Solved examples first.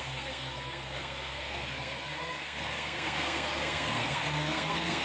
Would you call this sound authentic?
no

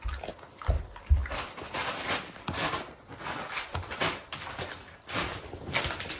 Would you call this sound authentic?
yes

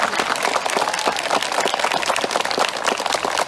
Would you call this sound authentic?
yes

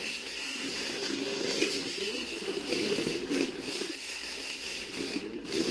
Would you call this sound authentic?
no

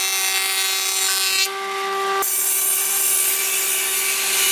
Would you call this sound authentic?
yes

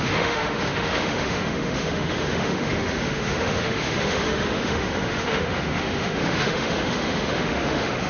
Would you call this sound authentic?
no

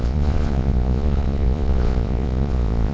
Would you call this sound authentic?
no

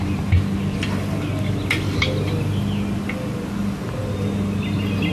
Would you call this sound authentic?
yes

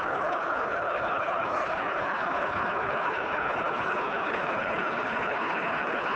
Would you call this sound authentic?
no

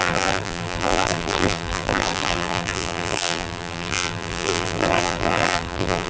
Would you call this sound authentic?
no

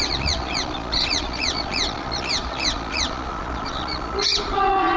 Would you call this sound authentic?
no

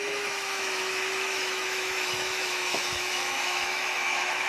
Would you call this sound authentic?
no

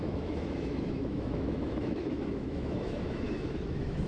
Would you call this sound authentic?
no